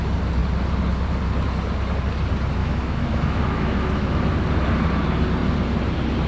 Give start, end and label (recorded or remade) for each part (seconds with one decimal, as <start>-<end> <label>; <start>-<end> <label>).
0.0-2.6 recorded; 2.6-4.2 remade; 4.2-6.3 recorded